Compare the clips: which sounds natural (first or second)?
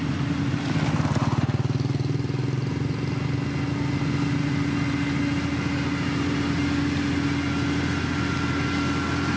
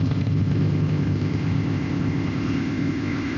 first